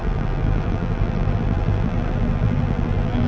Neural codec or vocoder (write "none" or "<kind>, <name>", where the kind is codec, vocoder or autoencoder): vocoder, BigVGAN v2